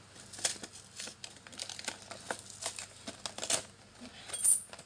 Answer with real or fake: real